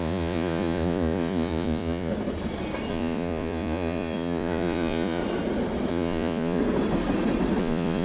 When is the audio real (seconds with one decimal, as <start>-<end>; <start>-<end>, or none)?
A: 2.1-2.9; 5.2-5.9; 6.6-7.6